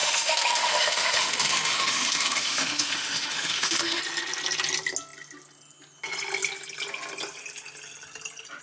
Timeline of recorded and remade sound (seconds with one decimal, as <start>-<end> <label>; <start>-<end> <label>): 0.0-4.0 remade; 4.0-8.6 recorded